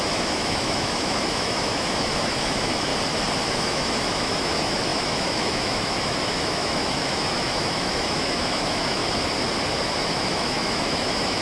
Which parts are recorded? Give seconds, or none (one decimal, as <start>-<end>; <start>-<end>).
2.9-3.5; 9.0-10.1